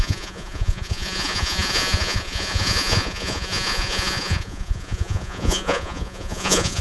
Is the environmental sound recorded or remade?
remade